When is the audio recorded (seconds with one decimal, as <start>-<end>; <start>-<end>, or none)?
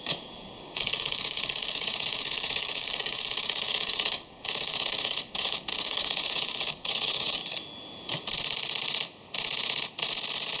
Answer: 7.4-10.6